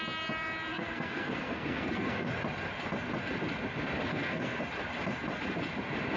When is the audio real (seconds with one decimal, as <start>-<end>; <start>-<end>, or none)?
0.0-0.7; 2.3-4.1; 4.6-6.2